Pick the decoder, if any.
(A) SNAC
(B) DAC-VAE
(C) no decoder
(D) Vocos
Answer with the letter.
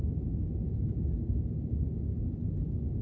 C